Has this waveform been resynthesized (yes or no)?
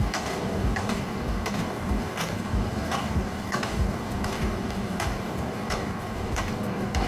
yes